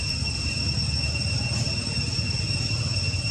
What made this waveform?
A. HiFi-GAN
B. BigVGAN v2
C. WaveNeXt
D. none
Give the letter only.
D